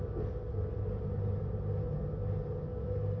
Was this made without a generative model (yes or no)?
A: yes